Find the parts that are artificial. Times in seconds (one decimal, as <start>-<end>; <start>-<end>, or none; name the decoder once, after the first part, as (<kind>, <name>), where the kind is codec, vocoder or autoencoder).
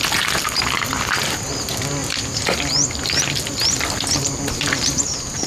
2.0-5.5 (vocoder, BigVGAN v2)